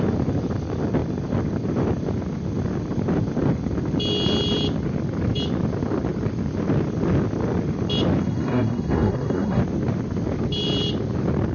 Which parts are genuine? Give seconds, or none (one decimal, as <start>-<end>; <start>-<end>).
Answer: 0.0-8.2; 9.6-11.5